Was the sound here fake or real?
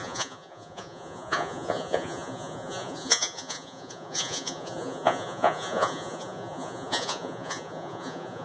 fake